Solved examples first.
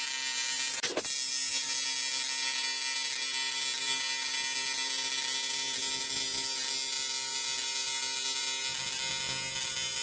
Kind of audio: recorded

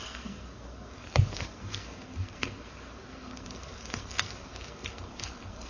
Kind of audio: remade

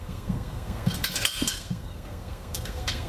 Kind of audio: remade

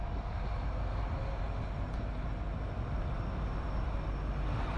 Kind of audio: recorded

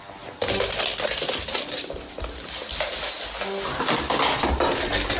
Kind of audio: recorded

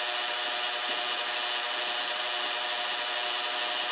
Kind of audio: recorded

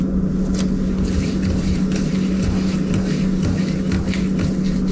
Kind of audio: recorded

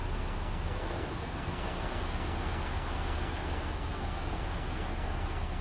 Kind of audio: remade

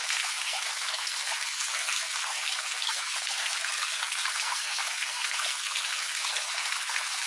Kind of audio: remade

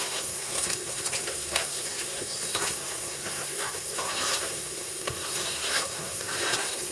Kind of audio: remade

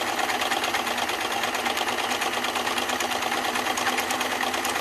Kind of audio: recorded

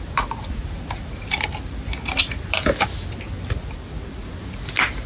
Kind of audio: recorded